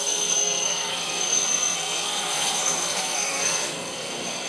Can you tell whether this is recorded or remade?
remade